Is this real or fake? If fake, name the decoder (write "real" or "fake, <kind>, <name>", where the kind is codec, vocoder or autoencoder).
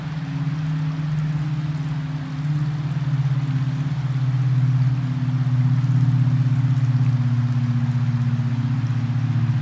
real